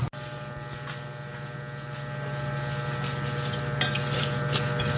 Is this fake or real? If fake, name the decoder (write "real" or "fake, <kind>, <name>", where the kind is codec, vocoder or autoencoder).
real